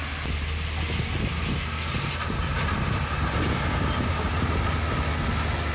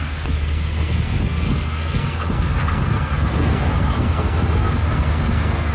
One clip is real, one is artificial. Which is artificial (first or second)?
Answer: second